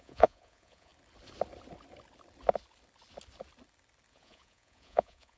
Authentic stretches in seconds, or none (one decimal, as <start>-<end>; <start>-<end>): 0.9-4.1